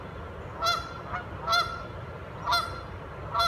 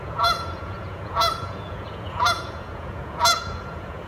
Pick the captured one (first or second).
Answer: first